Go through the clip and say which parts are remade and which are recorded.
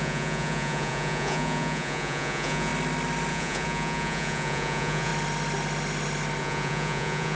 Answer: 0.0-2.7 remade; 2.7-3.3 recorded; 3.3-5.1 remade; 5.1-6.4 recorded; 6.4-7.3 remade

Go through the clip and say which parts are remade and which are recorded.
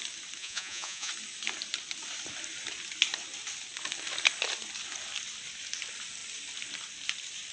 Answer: 0.0-0.4 recorded; 0.4-1.1 remade; 1.1-7.5 recorded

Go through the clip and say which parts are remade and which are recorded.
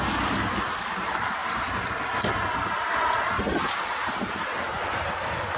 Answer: 0.0-5.6 recorded